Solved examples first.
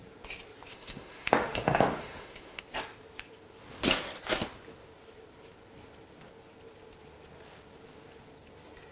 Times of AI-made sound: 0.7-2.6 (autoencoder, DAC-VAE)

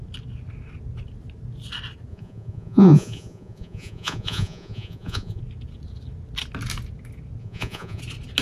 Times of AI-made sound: 2.1-5.4 (vocoder, Vocos); 7.4-8.0

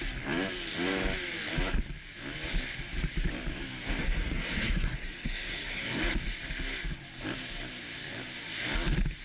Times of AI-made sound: 4.0-6.0 (codec, SNAC)

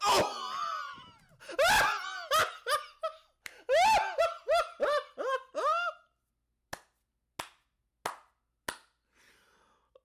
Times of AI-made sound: none

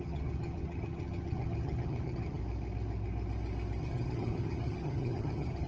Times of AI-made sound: 0.0-2.4 (vocoder, HiFi-GAN); 3.8-5.7

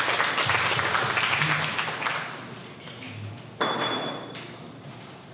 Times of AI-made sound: none

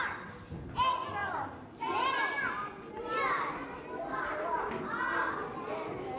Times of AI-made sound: 1.2-4.7 (vocoder, BigVGAN v2)

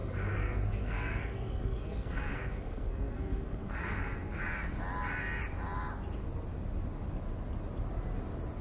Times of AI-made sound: 0.0-4.4 (codec, SNAC)